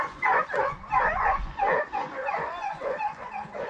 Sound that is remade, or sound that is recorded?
remade